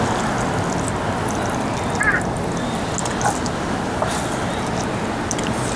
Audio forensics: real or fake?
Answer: real